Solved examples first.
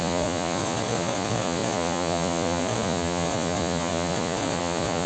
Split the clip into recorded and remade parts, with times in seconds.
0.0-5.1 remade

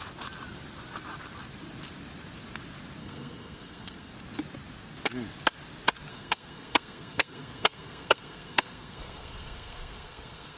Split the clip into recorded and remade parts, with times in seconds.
0.0-3.0 recorded; 3.0-4.1 remade; 4.1-6.1 recorded; 6.1-10.6 remade

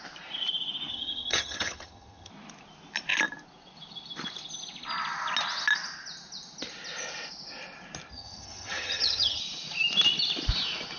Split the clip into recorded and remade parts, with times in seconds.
0.0-0.9 recorded; 0.9-2.3 remade; 2.3-8.1 recorded; 8.1-9.4 remade; 9.4-11.0 recorded